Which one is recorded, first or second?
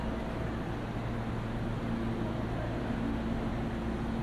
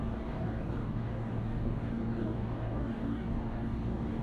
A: first